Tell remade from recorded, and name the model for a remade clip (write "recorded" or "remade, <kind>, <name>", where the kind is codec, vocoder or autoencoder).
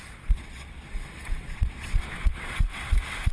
remade, vocoder, WaveNeXt